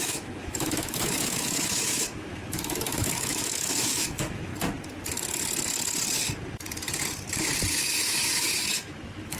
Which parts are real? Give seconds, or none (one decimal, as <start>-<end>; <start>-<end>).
4.5-7.7